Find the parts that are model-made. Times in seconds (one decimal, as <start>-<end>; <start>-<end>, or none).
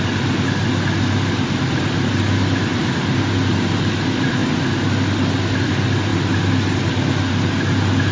none